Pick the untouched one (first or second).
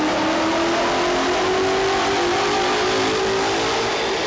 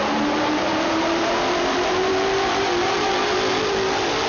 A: first